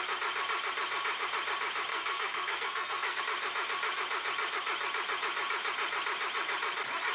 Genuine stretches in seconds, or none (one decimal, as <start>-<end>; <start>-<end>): 0.0-1.9; 3.2-7.1

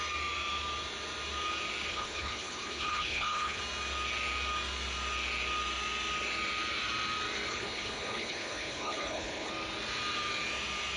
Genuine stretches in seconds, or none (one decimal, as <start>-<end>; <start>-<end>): 0.0-1.9; 3.6-7.5; 9.5-11.0

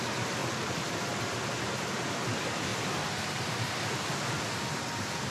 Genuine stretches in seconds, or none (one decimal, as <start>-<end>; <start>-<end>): 0.0-2.7; 3.9-5.3

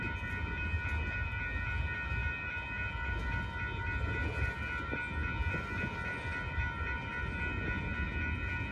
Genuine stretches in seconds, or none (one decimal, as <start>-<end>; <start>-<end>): 0.0-8.7